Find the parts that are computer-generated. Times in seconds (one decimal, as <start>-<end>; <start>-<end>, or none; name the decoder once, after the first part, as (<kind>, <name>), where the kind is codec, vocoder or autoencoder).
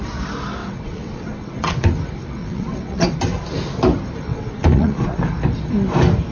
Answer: 0.6-1.9 (vocoder, WaveNeXt); 2.4-3.1; 4.3-5.2